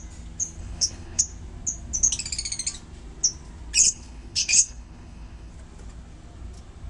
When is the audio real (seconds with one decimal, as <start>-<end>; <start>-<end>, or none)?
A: 0.0-0.6; 1.2-3.8; 5.5-6.9